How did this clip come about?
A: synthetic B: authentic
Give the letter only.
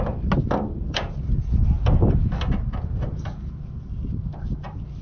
B